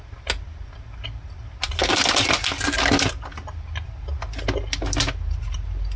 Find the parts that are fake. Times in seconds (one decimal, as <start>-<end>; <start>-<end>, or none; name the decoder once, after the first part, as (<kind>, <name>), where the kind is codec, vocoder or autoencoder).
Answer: none